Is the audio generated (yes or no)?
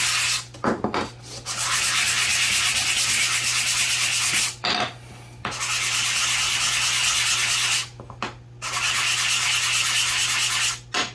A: no